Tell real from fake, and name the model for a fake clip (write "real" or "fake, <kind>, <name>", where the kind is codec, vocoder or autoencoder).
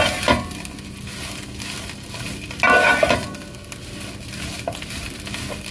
real